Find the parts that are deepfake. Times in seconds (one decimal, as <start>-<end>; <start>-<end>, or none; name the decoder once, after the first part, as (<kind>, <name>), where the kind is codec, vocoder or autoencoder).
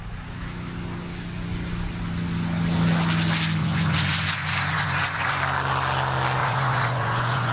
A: 3.6-5.4 (vocoder, Vocos); 6.4-7.5